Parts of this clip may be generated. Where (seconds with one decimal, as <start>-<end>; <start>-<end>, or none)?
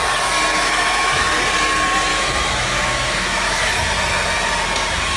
0.5-1.4; 2.1-3.8